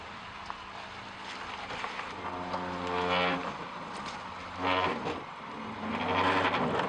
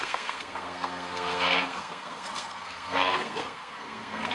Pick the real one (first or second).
first